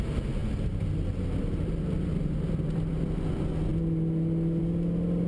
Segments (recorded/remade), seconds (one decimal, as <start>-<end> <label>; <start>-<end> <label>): 0.0-5.3 recorded